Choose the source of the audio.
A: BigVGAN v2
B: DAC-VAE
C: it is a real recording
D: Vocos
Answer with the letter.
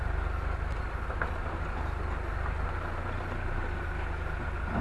C